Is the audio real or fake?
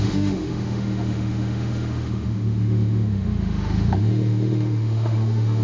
fake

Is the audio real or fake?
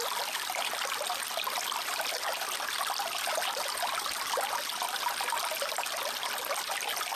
real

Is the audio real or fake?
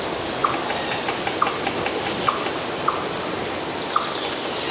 real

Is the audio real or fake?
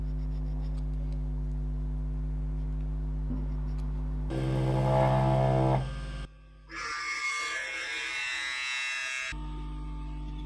real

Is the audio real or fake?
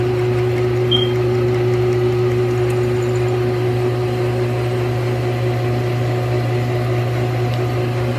real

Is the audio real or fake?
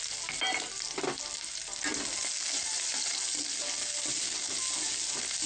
real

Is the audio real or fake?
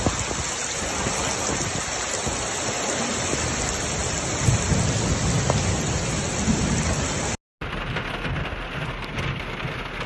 real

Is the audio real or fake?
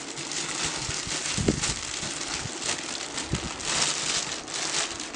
real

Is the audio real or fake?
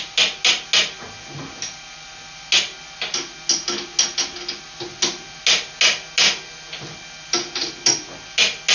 real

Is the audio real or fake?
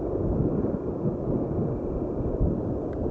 real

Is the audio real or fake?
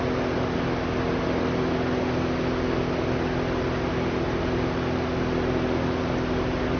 real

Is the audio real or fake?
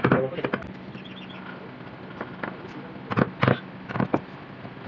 real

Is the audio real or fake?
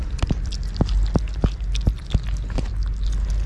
real